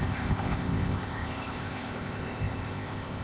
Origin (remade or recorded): remade